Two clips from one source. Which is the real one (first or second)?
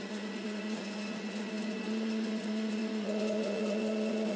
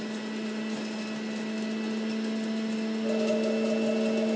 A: second